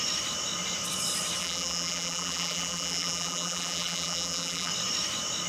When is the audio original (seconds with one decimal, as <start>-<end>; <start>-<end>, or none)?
0.0-1.4; 4.7-5.5